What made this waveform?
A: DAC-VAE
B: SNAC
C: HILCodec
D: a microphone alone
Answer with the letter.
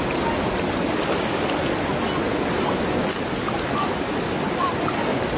D